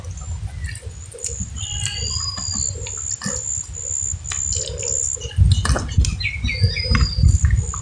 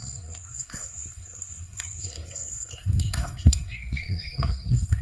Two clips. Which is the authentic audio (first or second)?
first